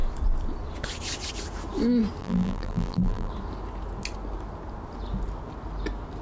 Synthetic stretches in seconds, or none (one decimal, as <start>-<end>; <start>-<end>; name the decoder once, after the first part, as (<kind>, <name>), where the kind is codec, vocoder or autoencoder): 2.2-3.3 (vocoder, BigVGAN v2)